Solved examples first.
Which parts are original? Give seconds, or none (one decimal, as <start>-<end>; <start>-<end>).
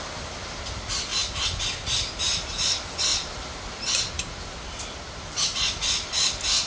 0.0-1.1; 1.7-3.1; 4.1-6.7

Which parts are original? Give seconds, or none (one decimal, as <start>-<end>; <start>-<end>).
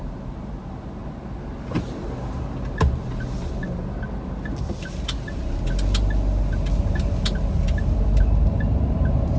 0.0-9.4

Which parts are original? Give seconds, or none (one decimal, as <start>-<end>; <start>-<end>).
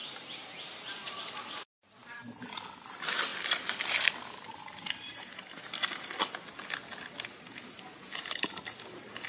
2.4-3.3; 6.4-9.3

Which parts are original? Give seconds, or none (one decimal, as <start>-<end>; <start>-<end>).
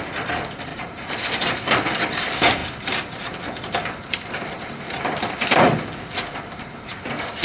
0.0-0.7; 1.6-4.0; 5.8-7.4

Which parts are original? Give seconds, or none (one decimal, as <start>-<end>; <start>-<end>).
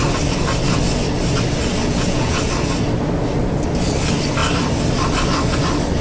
0.0-1.8; 2.4-6.0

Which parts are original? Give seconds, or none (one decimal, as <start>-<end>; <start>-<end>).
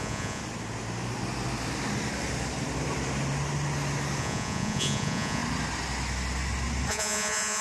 0.4-4.2; 5.4-6.9